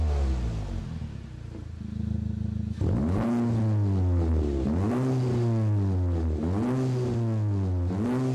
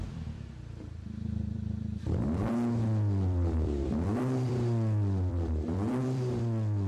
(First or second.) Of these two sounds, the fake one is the second